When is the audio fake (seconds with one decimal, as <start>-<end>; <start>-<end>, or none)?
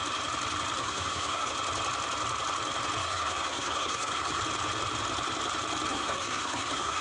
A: 0.8-1.5; 3.0-4.4; 5.9-7.0